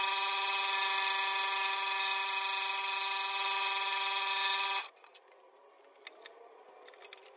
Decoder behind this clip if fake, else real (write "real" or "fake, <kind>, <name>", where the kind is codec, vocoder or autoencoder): real